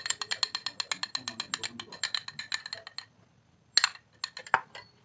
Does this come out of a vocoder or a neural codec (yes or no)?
no